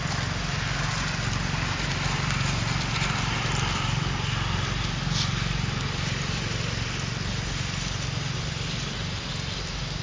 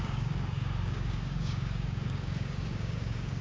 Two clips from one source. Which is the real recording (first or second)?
first